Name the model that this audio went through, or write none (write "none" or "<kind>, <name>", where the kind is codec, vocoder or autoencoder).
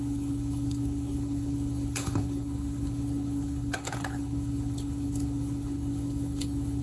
codec, HILCodec